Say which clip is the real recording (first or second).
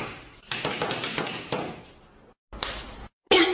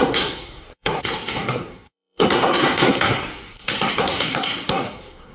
first